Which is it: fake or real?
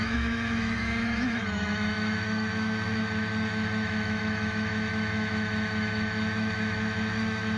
fake